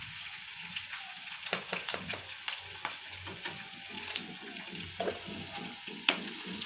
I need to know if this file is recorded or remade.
remade